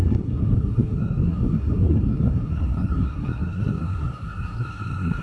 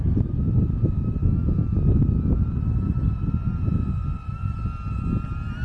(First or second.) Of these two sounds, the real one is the second